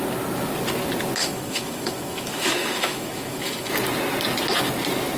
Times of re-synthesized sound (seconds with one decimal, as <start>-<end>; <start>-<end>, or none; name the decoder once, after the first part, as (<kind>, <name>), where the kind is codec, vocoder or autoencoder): 1.2-3.7 (autoencoder, DAC-VAE)